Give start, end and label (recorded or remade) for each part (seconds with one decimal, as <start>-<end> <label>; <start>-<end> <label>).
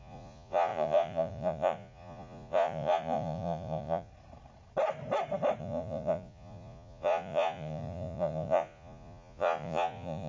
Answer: 0.0-4.1 remade; 4.1-5.6 recorded; 5.6-10.3 remade